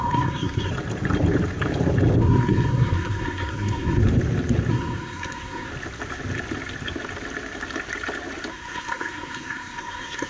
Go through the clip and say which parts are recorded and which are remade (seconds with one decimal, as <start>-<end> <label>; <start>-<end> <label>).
0.0-0.7 remade; 0.7-2.2 recorded; 2.2-4.0 remade; 4.0-4.7 recorded; 4.7-5.7 remade; 5.7-8.5 recorded; 8.5-10.3 remade